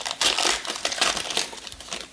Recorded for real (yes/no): yes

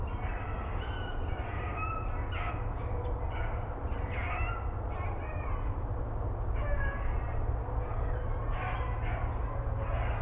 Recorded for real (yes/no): yes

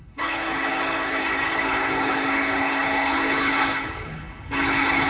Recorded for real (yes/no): no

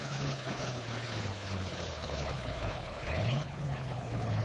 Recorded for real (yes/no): no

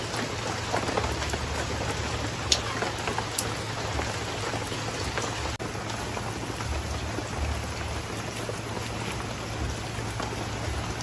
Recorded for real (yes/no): yes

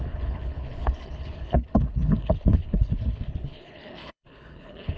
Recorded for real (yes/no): no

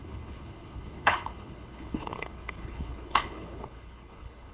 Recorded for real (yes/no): no